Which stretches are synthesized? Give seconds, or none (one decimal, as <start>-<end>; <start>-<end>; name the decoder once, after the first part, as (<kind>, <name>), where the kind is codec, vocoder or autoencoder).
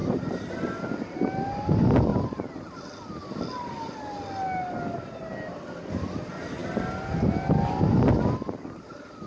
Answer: 0.0-0.5 (vocoder, BigVGAN v2); 2.1-2.7